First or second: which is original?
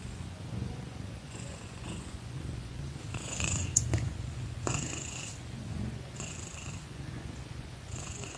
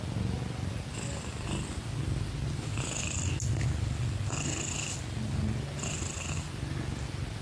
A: second